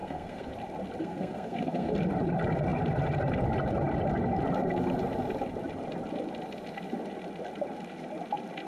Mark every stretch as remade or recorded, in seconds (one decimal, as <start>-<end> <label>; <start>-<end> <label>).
0.0-0.5 remade; 0.5-1.0 recorded; 1.0-1.9 remade; 1.9-8.7 recorded